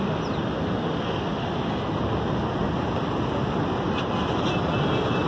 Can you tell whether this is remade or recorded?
recorded